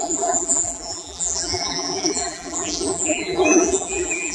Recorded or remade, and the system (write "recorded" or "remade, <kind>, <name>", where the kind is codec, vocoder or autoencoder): remade, vocoder, BigVGAN v2